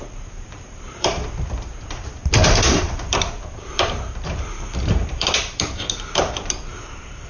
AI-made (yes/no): yes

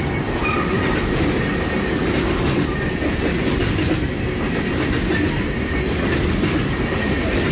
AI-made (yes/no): no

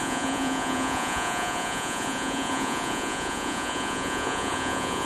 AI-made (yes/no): yes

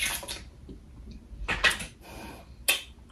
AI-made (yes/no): no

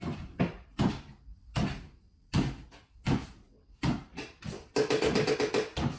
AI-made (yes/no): yes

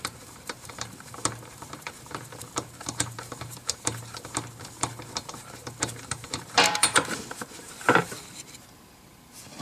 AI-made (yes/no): yes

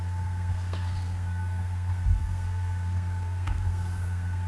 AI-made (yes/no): yes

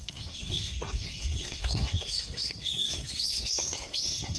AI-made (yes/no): yes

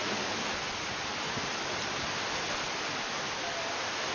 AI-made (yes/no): no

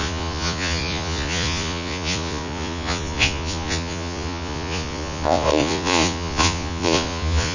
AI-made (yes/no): yes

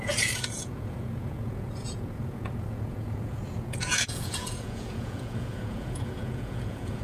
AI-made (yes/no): yes